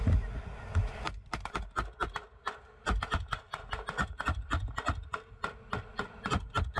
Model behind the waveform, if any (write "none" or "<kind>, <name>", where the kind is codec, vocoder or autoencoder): none